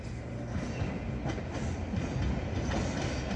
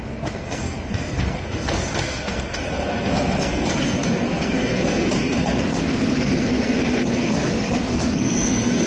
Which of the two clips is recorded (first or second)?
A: first